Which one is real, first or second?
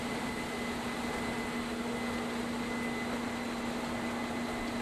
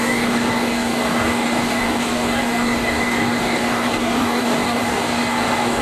first